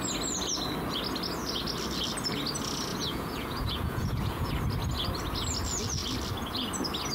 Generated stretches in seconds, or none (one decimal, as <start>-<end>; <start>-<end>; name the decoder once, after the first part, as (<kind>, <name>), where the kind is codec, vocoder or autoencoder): 2.9-4.5 (vocoder, Vocos)